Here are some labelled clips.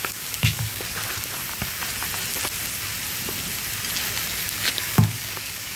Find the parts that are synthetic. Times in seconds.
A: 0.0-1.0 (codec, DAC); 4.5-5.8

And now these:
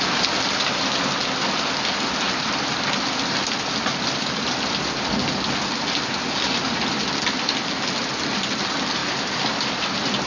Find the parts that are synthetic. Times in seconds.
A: 9.0-9.5 (vocoder, BigVGAN v2)

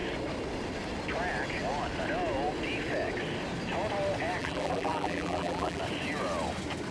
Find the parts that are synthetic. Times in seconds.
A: 4.4-5.8 (vocoder, BigVGAN v2)

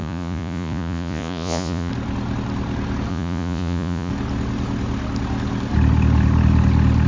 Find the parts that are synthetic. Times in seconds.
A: 0.0-1.9 (vocoder, Vocos); 3.1-4.1

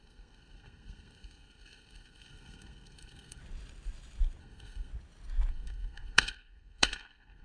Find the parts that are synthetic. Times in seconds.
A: 0.0-3.4 (codec, SNAC); 4.4-4.9; 5.5-7.4

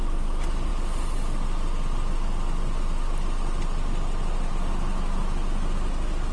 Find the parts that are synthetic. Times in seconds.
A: none